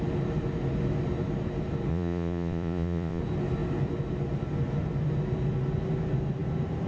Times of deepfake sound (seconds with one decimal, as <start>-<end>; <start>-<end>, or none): 1.9-3.2

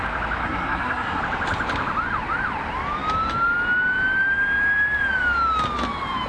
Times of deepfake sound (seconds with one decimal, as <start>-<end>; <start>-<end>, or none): 0.4-1.2

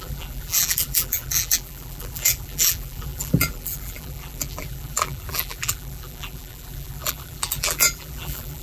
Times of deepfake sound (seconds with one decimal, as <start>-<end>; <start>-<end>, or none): 0.0-8.6